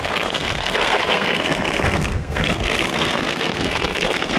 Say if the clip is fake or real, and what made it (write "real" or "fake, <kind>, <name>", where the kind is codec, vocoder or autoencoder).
fake, codec, SNAC